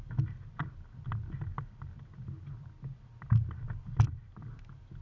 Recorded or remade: recorded